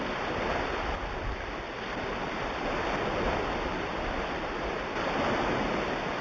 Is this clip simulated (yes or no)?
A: no